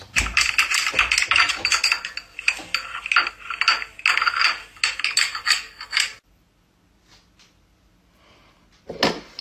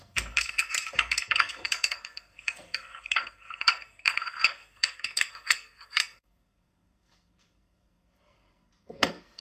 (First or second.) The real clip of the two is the first